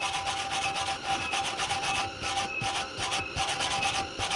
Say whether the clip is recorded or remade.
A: recorded